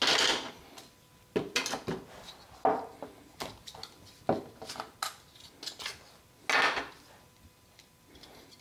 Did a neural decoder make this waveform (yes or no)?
no